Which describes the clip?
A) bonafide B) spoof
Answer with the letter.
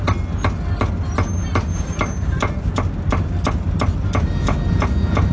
A